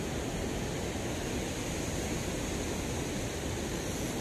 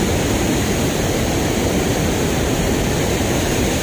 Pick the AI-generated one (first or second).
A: second